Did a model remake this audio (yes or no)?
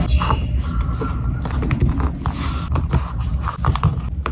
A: no